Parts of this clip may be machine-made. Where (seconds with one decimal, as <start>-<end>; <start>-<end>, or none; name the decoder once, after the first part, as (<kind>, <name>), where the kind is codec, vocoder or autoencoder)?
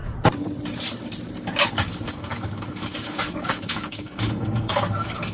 1.7-5.3 (codec, DAC)